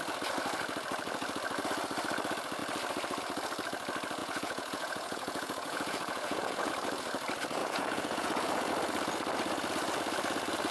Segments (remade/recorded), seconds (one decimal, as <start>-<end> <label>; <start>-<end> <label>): 0.0-4.2 recorded; 4.2-6.7 remade; 6.7-7.6 recorded; 7.6-8.7 remade; 8.7-10.7 recorded

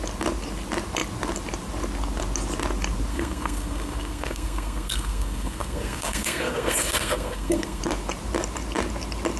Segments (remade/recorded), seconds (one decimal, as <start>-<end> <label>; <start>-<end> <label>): 0.0-3.1 recorded; 3.1-7.8 remade; 7.8-9.4 recorded